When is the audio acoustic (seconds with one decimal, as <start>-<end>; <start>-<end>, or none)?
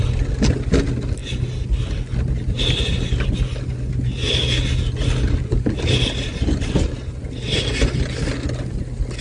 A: 0.0-9.2